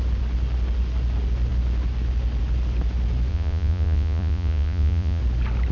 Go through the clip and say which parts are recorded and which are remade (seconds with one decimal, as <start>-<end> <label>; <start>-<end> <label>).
0.0-3.3 recorded; 3.3-5.2 remade; 5.2-5.7 recorded